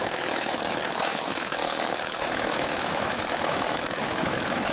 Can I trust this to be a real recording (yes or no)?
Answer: no